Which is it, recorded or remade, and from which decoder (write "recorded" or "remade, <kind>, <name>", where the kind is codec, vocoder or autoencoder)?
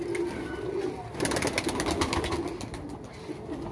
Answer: recorded